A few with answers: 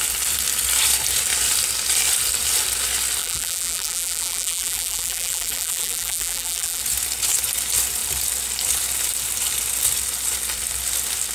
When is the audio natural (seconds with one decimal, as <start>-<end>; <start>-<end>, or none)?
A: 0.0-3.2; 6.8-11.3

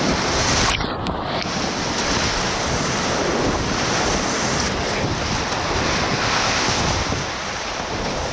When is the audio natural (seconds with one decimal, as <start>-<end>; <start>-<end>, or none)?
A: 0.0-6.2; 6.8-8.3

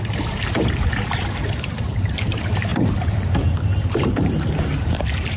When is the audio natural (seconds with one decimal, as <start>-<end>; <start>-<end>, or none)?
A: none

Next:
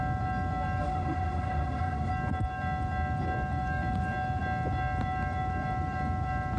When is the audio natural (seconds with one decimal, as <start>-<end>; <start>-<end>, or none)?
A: 0.0-0.8; 2.1-6.6

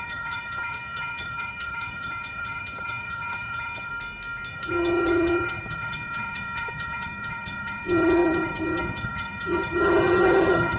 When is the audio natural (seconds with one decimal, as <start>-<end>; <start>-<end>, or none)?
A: 3.9-4.5

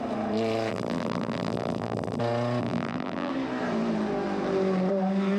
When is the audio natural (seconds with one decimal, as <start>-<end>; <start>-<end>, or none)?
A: 0.0-0.7; 2.2-2.6; 3.3-5.4

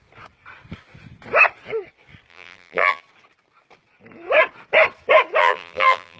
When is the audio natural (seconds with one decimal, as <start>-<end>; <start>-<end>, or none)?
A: 0.0-2.3; 3.0-5.4